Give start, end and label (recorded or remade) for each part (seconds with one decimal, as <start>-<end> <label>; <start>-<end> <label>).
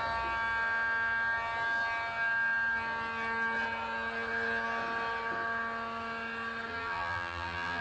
0.0-6.7 recorded; 6.7-7.8 remade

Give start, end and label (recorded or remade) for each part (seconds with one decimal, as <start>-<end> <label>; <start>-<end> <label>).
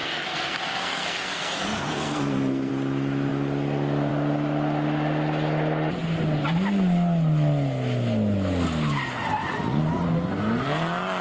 0.0-2.7 remade; 2.7-11.2 recorded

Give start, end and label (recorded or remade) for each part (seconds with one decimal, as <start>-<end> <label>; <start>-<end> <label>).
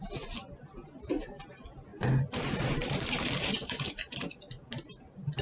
0.0-1.9 recorded; 1.9-5.4 remade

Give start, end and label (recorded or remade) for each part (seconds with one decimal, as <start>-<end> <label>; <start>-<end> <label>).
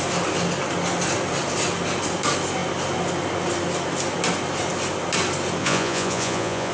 0.0-5.6 recorded; 5.6-6.7 remade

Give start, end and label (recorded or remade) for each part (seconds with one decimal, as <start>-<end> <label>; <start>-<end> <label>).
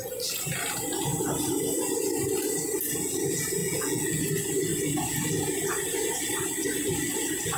0.0-3.6 recorded; 3.6-4.2 remade; 4.2-7.6 recorded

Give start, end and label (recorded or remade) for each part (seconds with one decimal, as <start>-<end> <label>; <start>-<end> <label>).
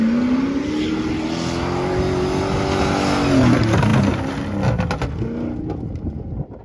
0.0-6.6 recorded